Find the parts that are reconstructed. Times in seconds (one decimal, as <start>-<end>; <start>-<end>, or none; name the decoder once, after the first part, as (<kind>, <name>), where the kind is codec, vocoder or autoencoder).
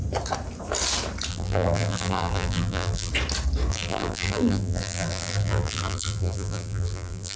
1.3-3.1 (vocoder, BigVGAN v2); 3.7-7.4